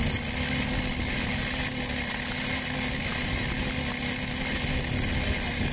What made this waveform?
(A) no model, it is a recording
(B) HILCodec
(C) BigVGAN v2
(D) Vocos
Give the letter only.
A